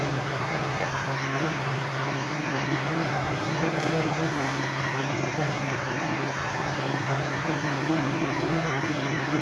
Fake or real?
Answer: fake